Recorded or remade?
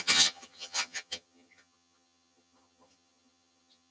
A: remade